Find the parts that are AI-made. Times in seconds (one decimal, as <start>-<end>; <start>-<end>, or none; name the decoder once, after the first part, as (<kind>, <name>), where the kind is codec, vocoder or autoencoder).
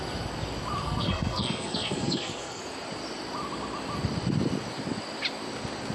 0.8-2.6 (codec, SNAC)